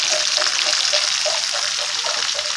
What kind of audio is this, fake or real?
real